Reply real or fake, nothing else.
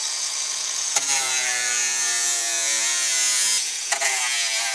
fake